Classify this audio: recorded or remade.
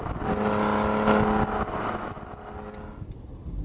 recorded